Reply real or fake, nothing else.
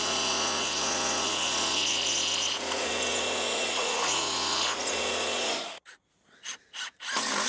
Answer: fake